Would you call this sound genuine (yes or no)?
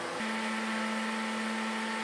yes